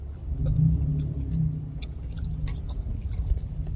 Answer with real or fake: real